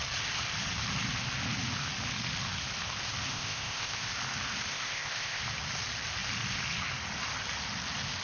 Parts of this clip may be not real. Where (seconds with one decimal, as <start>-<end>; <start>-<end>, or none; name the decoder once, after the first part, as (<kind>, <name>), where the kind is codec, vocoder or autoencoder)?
3.3-4.1 (codec, ZipCodec); 4.7-5.4